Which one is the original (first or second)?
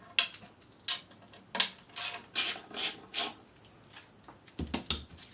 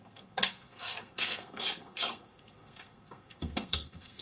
first